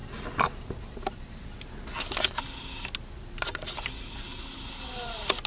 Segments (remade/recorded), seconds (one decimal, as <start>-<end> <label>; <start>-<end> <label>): 0.0-5.5 recorded